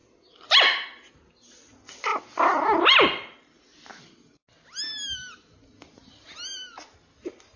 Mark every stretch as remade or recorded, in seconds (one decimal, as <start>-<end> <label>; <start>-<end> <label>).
0.0-7.6 recorded